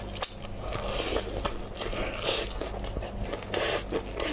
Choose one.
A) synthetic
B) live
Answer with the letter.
B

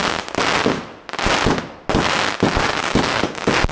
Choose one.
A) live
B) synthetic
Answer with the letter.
A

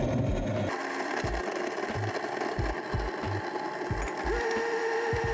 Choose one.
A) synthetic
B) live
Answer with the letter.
B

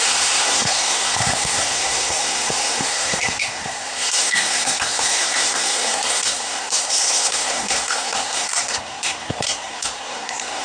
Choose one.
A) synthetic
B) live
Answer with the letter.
A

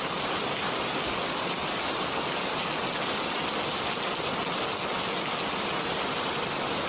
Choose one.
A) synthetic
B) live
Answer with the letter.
B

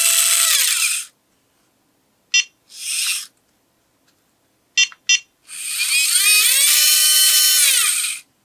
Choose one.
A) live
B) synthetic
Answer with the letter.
A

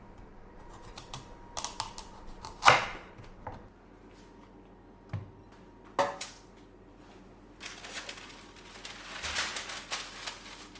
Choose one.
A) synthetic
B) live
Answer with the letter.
B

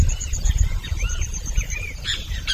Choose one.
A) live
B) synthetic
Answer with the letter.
B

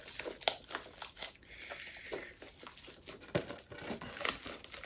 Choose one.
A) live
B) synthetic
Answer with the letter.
A